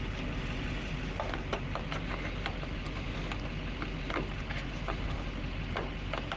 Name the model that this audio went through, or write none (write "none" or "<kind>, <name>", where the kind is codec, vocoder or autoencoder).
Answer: none